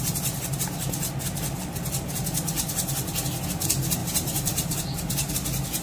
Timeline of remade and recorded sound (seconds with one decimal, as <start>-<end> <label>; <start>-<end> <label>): 0.0-4.0 recorded; 4.0-5.3 remade; 5.3-5.8 recorded